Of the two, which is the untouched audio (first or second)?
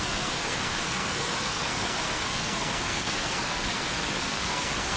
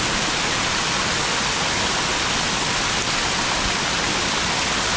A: second